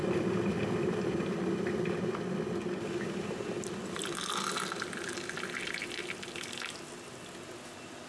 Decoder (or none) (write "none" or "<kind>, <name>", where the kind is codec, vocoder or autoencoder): none